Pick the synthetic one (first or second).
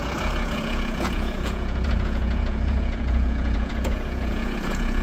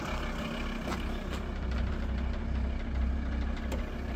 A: first